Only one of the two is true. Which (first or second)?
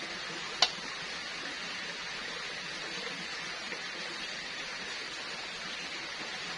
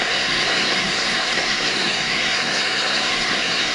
first